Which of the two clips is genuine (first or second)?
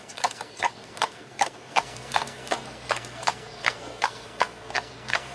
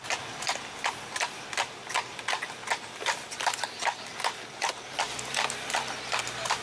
second